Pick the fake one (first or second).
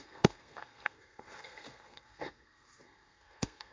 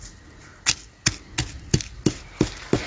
first